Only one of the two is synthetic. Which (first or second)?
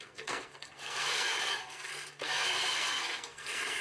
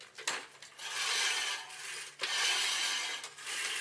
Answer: first